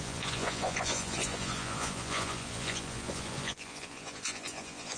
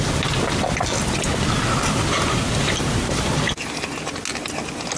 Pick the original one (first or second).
second